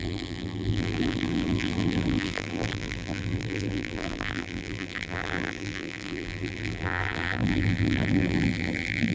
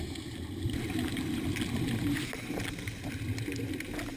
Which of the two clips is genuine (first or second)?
second